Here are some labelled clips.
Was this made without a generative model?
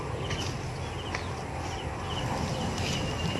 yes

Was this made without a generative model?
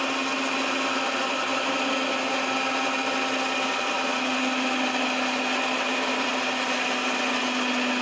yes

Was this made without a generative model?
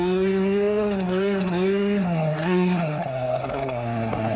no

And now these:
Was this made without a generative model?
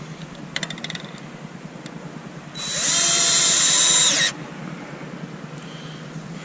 yes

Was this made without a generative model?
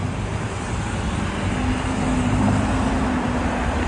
yes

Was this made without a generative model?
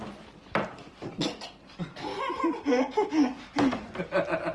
yes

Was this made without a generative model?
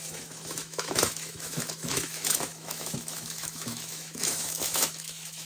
no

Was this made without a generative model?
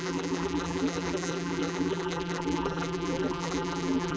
no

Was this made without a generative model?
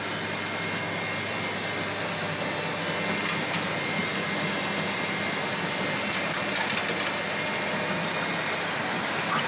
yes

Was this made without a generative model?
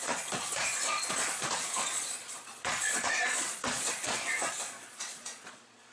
no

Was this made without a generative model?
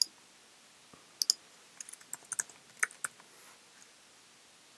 yes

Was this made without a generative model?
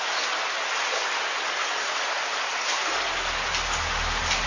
yes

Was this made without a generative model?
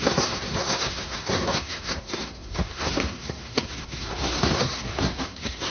no